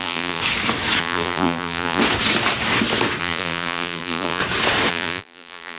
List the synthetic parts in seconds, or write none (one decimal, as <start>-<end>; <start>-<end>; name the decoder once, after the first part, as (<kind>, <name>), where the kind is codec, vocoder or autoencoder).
0.0-0.4 (vocoder, BigVGAN v2); 1.0-2.0; 3.2-4.4; 4.9-5.8